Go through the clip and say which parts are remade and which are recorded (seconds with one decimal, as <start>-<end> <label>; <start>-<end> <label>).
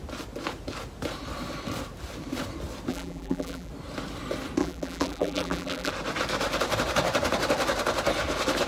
0.0-2.9 recorded; 2.9-3.7 remade; 3.7-4.6 recorded; 4.6-5.9 remade; 5.9-8.7 recorded